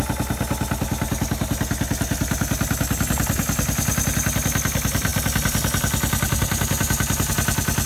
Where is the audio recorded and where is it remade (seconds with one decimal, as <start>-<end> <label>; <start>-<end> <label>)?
0.0-7.9 recorded